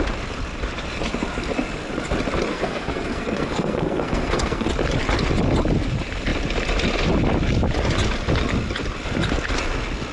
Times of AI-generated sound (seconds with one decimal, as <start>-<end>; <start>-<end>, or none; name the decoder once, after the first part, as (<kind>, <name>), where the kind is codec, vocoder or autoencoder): 2.5-4.7 (codec, SNAC)